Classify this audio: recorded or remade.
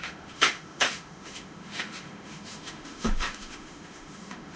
remade